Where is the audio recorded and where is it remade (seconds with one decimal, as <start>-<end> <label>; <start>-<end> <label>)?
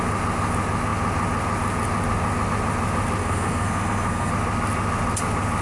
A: 0.0-3.2 recorded; 3.2-4.3 remade; 4.3-5.6 recorded